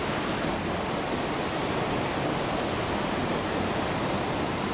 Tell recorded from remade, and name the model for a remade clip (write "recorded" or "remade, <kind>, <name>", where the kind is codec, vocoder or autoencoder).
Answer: recorded